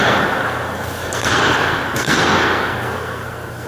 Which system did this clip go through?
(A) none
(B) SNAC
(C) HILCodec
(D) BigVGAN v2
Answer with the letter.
B